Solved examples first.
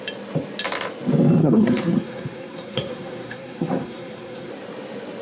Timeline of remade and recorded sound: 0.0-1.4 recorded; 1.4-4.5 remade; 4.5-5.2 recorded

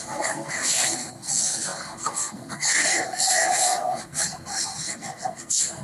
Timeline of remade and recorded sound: 0.0-5.8 remade

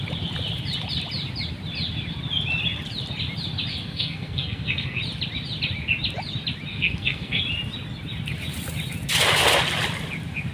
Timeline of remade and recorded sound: 0.0-3.7 recorded; 3.7-5.0 remade; 5.0-6.7 recorded; 6.7-7.4 remade; 7.4-10.5 recorded

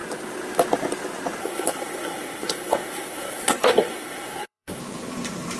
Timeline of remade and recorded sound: 0.0-1.4 recorded; 1.4-4.8 remade; 4.8-5.6 recorded

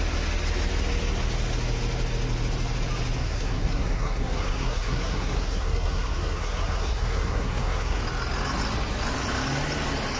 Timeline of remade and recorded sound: 0.0-3.2 recorded; 3.2-8.0 remade; 8.0-10.2 recorded